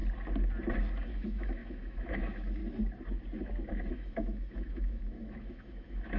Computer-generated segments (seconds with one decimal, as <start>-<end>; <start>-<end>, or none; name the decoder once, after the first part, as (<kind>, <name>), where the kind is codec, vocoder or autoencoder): 1.1-2.6 (autoencoder, DAC-VAE); 3.9-6.2

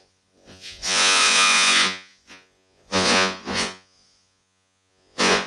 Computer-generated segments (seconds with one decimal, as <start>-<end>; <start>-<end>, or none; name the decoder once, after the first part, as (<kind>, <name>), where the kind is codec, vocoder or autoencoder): 0.0-5.5 (vocoder, Vocos)